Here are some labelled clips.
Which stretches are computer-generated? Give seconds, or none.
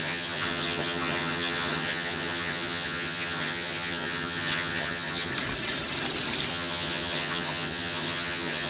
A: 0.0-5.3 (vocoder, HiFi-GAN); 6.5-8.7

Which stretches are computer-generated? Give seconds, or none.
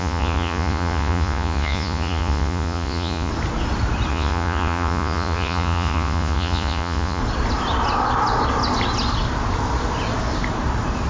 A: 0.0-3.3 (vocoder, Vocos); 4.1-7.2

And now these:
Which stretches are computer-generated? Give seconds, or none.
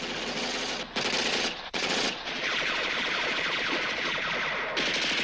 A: 1.2-4.3 (vocoder, Vocos)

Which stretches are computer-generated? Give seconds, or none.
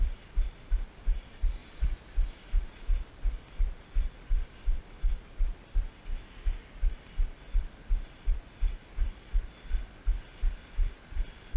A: 1.6-3.1 (vocoder, BigVGAN v2)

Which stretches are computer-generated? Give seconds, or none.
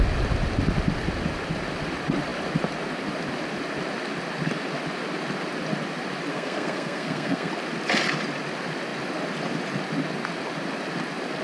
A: 6.3-7.5 (codec, SNAC)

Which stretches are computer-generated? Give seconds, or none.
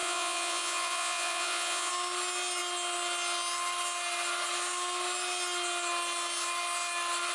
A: 0.0-1.9 (vocoder, Vocos)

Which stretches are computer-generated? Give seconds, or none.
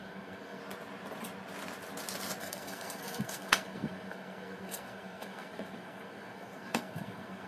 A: 0.0-0.6 (codec, SNAC); 2.4-7.5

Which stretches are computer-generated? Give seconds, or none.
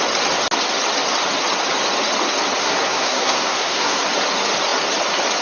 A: 2.6-4.0 (codec, SNAC)